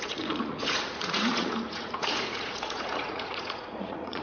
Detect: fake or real fake